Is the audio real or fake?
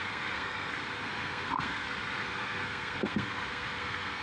fake